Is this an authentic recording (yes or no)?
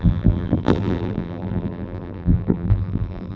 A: no